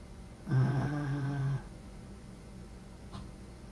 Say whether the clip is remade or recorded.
remade